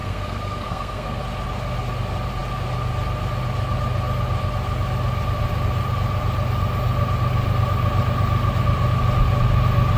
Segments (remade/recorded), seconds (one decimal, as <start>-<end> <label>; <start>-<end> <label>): 0.0-1.2 remade; 1.2-10.0 recorded